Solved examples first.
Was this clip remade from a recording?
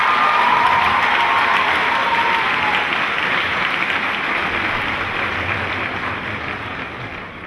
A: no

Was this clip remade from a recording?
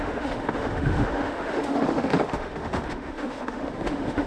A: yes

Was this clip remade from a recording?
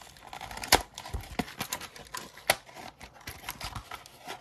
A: no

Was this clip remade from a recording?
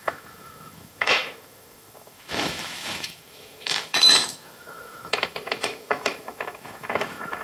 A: yes